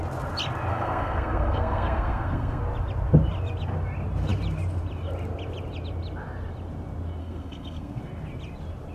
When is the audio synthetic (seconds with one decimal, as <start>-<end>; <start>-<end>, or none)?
0.7-2.6; 7.2-8.0